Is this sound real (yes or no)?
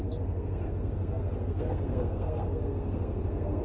no